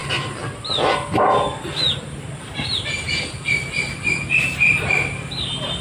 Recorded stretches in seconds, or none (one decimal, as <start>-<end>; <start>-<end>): none